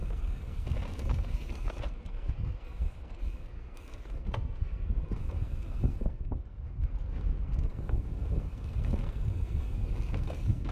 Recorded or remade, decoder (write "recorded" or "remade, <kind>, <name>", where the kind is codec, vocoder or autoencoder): remade, codec, SNAC